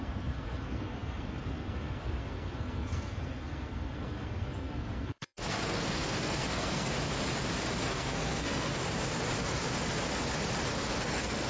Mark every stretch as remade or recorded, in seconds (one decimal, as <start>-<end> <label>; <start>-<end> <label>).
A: 0.0-6.9 remade; 6.9-7.8 recorded; 7.8-8.8 remade; 8.8-11.0 recorded; 11.0-11.5 remade

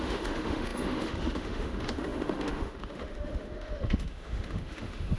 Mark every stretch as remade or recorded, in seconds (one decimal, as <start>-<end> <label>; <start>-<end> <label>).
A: 0.0-5.2 remade

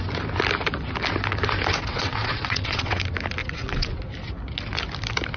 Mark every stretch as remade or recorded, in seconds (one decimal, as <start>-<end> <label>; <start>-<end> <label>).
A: 0.0-1.9 recorded; 1.9-3.0 remade; 3.0-3.4 recorded; 3.4-4.0 remade; 4.0-5.4 recorded

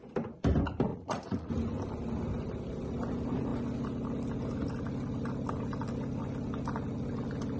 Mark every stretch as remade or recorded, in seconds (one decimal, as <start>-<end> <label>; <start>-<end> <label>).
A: 0.0-0.9 recorded; 0.9-1.5 remade; 1.5-7.6 recorded

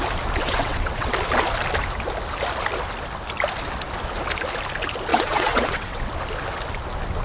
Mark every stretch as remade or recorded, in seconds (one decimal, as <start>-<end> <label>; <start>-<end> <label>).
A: 0.0-0.4 recorded; 0.4-1.1 remade; 1.1-5.1 recorded; 5.1-6.1 remade; 6.1-7.2 recorded

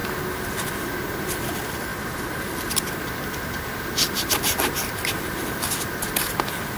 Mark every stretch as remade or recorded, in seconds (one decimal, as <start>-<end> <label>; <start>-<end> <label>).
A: 0.0-1.9 recorded; 1.9-2.9 remade; 2.9-6.8 recorded

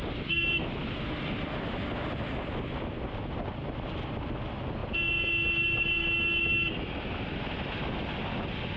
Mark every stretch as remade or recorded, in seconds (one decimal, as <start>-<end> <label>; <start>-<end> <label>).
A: 0.0-8.8 recorded